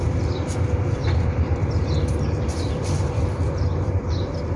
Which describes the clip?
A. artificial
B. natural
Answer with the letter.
A